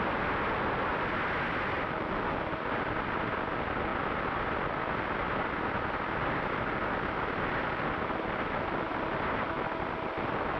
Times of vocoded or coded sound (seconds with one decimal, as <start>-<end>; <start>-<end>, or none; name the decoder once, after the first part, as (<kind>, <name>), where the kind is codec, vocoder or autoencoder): none